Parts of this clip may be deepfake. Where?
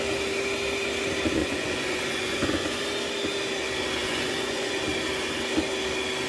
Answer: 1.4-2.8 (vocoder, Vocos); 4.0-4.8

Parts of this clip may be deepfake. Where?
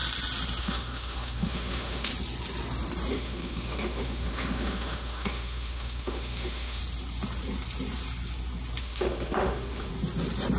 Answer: 0.6-2.1 (autoencoder, DAC-VAE); 3.1-6.8; 8.8-9.9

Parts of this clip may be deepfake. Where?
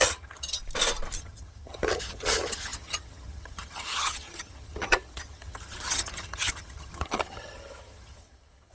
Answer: 0.0-0.6 (vocoder, HiFi-GAN); 1.2-8.7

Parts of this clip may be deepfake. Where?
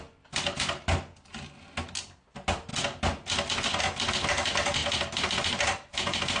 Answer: none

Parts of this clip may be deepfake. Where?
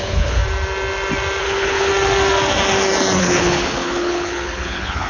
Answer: 0.0-0.4 (codec, HILCodec); 1.4-1.9; 3.2-5.1